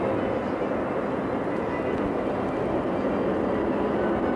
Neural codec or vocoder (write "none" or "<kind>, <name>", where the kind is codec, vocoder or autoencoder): none